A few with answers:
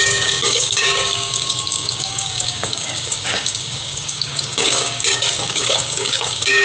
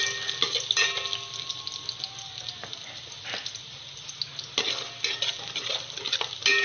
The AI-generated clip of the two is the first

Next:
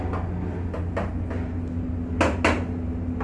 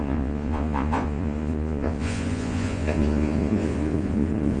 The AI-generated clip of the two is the second